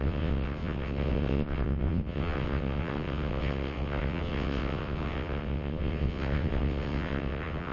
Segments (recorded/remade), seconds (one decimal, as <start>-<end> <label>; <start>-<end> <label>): 0.0-7.7 remade